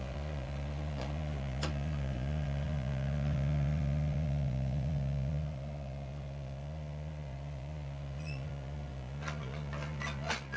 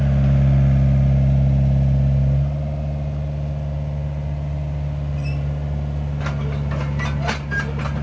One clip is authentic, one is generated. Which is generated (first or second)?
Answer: first